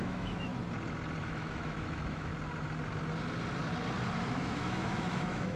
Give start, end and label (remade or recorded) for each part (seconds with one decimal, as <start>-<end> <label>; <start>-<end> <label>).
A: 0.0-0.5 remade; 0.5-1.2 recorded; 1.2-2.3 remade; 2.3-4.3 recorded; 4.3-5.6 remade